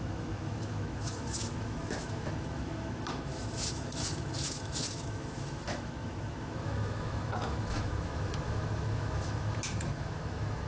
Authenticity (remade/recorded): remade